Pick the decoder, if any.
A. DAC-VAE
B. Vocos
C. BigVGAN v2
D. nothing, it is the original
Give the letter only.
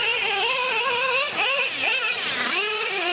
C